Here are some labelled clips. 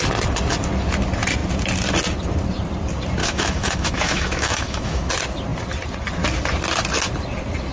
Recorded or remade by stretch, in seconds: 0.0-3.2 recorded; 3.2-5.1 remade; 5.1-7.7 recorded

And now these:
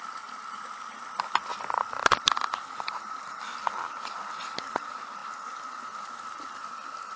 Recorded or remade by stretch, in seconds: 0.0-1.5 recorded; 1.5-3.4 remade; 3.4-7.2 recorded